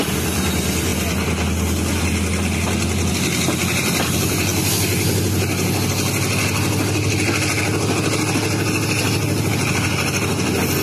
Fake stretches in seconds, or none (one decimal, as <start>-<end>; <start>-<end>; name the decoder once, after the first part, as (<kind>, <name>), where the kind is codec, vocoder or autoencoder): none